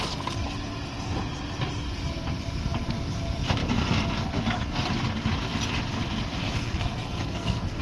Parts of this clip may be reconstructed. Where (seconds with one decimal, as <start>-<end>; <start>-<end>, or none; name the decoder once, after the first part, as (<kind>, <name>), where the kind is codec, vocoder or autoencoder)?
6.4-7.8 (codec, SNAC)

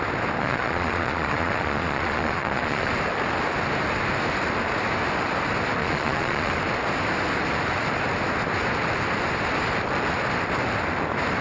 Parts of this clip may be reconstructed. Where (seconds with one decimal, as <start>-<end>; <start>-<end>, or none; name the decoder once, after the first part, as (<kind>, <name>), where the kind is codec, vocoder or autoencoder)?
0.4-2.9 (vocoder, Vocos); 5.8-6.5